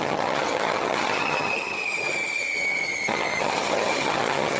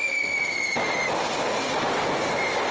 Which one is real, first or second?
second